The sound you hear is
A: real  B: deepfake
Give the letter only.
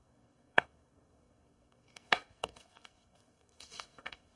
B